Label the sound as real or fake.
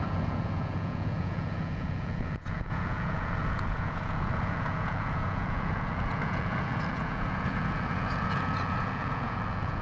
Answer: fake